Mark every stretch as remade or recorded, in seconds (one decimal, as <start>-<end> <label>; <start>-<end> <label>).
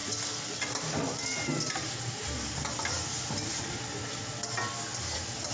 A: 0.0-5.5 remade